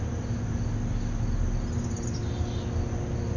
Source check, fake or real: real